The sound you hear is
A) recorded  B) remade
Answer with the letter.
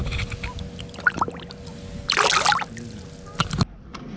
A